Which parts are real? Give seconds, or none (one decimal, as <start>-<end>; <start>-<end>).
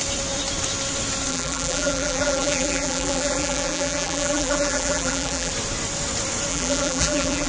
0.0-1.3; 5.5-6.5